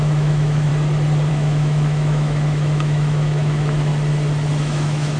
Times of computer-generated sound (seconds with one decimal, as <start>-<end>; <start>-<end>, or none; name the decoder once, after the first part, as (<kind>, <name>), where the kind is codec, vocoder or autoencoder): 0.0-0.7 (autoencoder, DAC-VAE); 1.3-3.9; 4.6-5.2